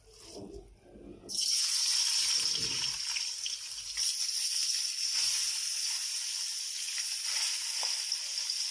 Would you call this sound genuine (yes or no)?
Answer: yes